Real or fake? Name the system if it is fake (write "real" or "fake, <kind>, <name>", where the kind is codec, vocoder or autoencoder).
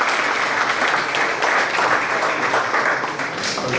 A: real